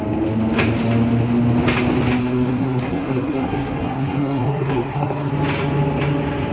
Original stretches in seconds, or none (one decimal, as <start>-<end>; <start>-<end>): 0.0-2.2; 5.3-6.5